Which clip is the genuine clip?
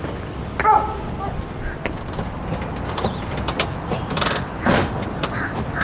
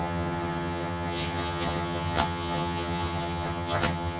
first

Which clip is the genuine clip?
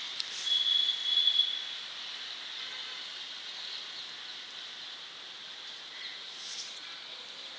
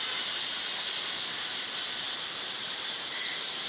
first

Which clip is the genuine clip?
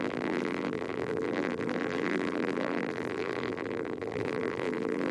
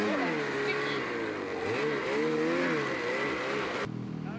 second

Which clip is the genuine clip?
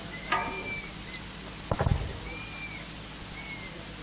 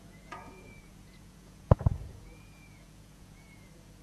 first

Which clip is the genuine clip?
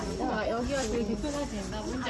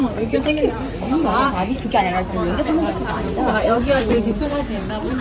first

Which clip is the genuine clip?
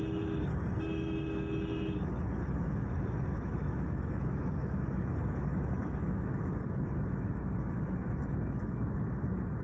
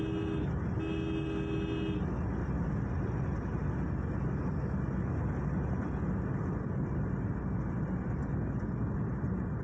second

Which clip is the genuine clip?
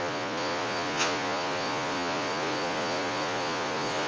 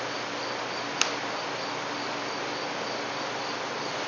second